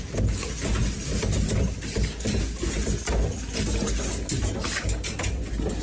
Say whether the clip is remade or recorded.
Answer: recorded